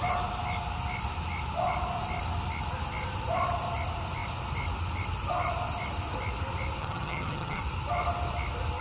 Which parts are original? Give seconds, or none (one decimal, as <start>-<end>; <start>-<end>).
0.0-6.8; 7.6-8.8